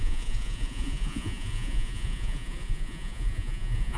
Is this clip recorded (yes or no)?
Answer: no